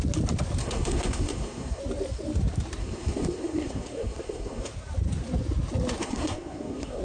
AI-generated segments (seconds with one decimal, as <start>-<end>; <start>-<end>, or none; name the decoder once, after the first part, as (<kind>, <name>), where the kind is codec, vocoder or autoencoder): 0.6-1.8 (codec, SNAC); 2.8-4.7; 6.0-7.0